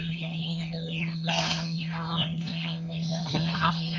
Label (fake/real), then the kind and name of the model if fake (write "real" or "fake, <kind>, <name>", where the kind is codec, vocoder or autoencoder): fake, codec, SNAC